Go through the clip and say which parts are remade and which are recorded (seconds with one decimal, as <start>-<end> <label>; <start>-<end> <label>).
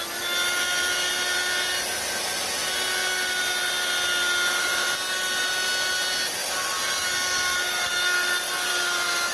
0.0-9.3 recorded